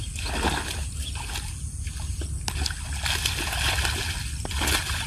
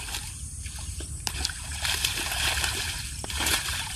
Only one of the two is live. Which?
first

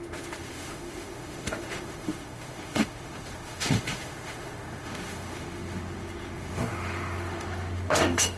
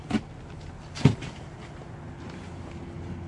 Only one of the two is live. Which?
second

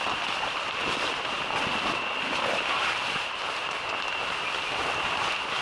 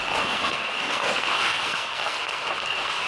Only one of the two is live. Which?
first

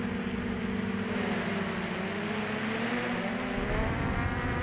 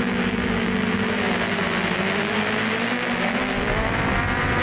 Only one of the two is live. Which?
first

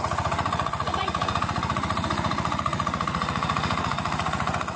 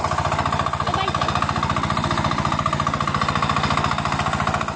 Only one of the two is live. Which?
second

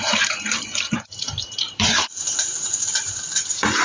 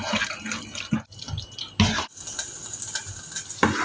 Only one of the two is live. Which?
second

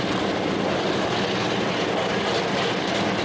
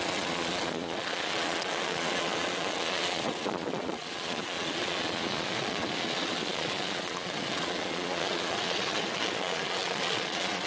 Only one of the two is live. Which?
first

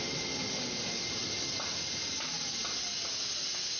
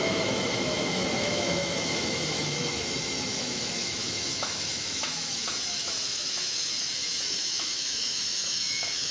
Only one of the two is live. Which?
first